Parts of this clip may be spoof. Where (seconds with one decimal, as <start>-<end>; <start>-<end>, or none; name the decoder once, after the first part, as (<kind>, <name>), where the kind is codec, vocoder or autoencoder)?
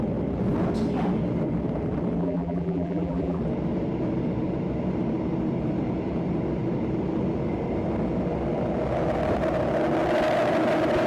2.2-3.4 (vocoder, BigVGAN v2)